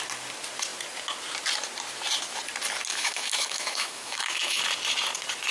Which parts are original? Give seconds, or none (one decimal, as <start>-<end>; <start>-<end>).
0.0-2.9; 4.6-5.5